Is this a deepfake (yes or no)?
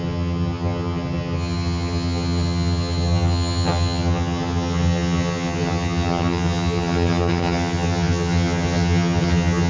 yes